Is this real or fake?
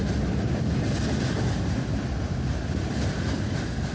real